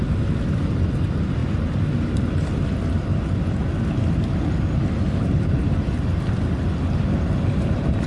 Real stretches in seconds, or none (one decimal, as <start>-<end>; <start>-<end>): 0.0-8.1